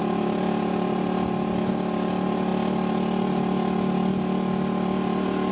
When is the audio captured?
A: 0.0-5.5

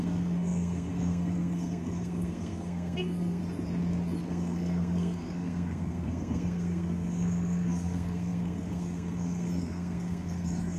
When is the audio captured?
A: 3.4-4.2

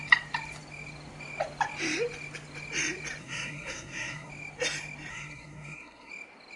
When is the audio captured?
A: 0.0-3.2; 4.3-5.1; 6.1-6.6

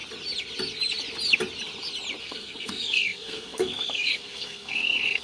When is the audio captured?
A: 0.0-2.2

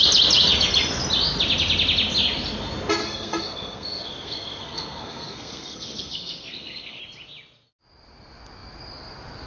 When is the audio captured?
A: 0.0-3.0; 7.0-9.5

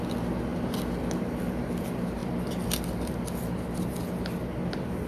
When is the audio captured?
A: 0.0-5.1

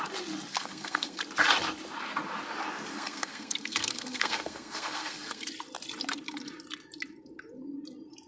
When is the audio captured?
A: 0.0-0.5; 1.2-2.9; 5.5-8.3

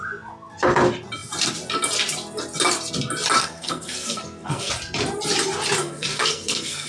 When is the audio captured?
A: 0.0-3.4; 4.7-5.8